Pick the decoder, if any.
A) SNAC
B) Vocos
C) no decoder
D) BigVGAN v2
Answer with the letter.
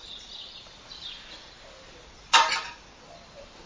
D